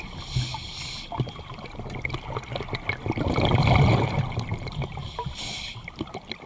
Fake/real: real